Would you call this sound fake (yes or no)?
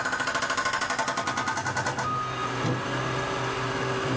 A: no